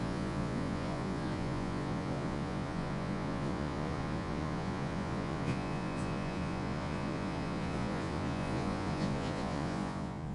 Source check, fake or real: fake